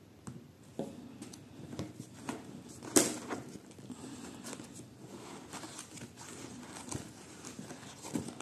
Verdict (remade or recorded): recorded